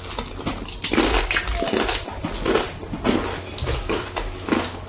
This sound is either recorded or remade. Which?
recorded